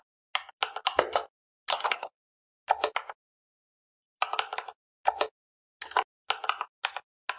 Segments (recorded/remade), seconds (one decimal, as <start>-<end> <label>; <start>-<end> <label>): 0.0-1.7 recorded; 1.7-2.4 remade; 2.4-7.4 recorded